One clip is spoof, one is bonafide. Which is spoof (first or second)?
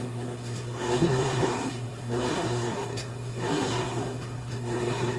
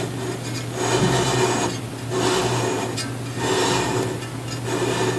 first